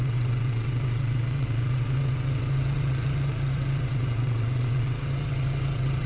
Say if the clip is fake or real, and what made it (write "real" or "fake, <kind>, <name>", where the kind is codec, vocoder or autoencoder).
fake, vocoder, WaveNeXt